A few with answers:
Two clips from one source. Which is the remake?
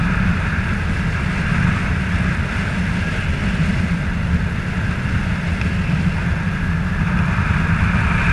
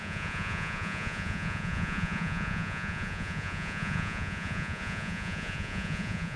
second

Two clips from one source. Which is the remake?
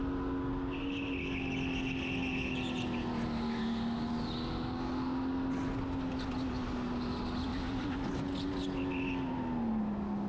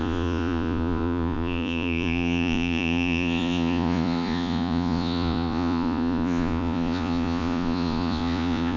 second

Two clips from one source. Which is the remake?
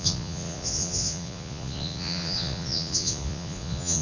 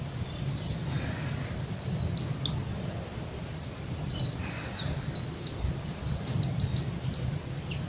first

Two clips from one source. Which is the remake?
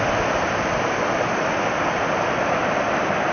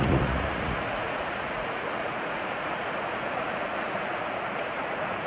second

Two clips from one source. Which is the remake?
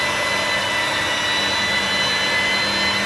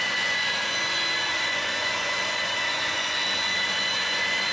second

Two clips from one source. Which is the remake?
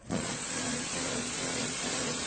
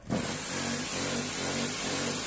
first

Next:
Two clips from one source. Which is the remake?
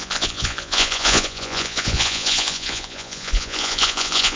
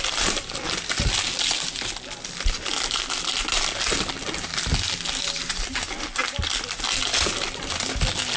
first